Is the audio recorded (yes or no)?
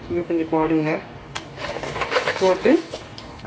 no